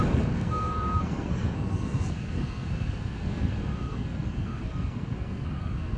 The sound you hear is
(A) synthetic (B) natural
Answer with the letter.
A